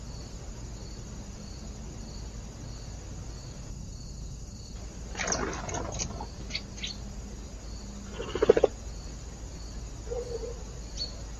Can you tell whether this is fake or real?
real